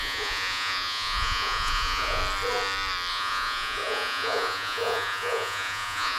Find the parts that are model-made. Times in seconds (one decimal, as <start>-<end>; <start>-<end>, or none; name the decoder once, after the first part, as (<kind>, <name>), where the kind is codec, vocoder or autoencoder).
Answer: 0.0-2.2 (vocoder, Vocos); 3.1-6.2